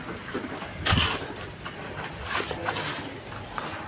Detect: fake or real real